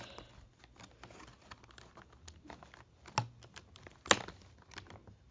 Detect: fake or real real